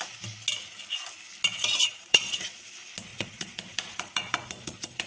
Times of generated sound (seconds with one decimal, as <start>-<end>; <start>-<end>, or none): 1.8-2.6; 3.1-5.1